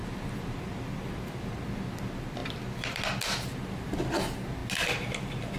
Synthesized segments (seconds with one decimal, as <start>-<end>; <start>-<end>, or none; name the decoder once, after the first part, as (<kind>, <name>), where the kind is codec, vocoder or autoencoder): 0.0-0.6 (vocoder, BigVGAN v2); 2.4-3.0